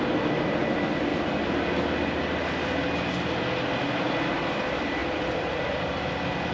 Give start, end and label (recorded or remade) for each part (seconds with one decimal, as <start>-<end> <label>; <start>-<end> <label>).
0.0-5.0 recorded; 5.0-5.6 remade; 5.6-6.5 recorded